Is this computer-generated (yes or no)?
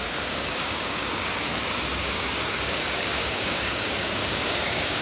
yes